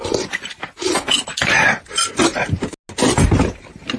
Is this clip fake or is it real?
real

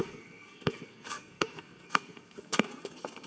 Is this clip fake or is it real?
fake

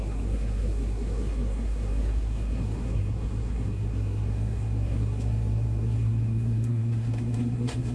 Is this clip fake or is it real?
fake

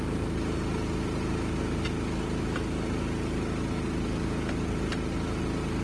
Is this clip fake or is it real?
real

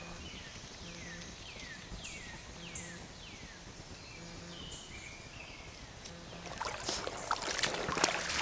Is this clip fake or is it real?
real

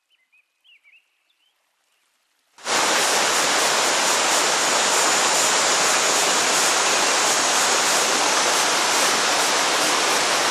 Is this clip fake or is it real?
real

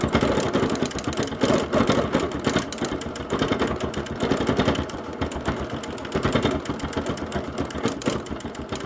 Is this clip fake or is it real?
real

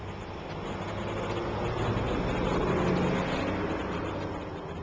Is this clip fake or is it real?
real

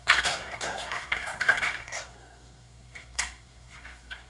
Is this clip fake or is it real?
fake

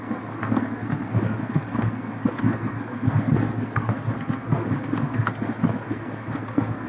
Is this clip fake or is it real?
fake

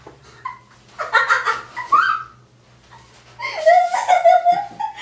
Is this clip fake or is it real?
real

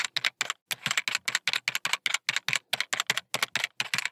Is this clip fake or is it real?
real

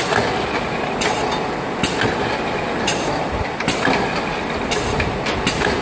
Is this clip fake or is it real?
real